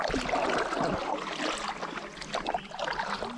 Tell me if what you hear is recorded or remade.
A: recorded